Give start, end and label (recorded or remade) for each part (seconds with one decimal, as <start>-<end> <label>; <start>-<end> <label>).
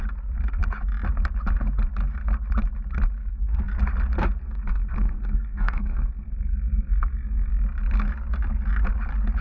0.0-3.3 recorded; 3.3-3.8 remade; 3.8-4.4 recorded; 4.4-7.5 remade; 7.5-9.4 recorded